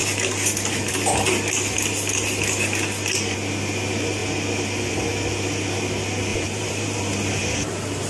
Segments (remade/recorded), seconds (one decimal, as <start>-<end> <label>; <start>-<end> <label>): 0.0-6.3 recorded; 6.3-7.0 remade; 7.0-7.4 recorded; 7.4-8.1 remade